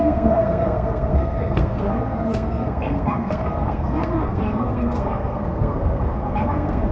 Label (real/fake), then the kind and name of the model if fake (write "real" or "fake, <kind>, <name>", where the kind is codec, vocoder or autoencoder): fake, codec, SNAC